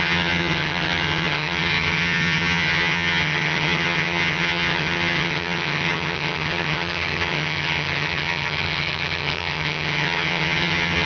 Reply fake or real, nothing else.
fake